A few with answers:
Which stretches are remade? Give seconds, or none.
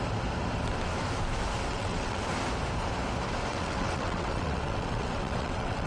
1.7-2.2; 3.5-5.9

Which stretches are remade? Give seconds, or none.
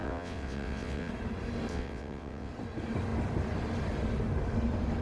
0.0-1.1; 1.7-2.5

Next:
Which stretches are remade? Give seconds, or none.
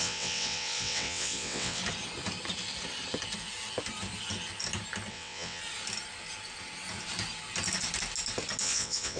0.0-1.8; 5.1-5.6; 8.6-9.2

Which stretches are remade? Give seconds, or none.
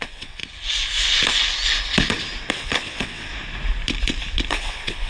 0.0-0.4; 2.5-3.3; 4.5-5.1